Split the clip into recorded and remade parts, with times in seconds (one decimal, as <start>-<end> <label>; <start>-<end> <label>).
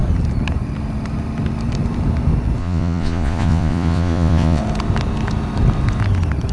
0.0-2.6 recorded; 2.6-4.6 remade; 4.6-6.5 recorded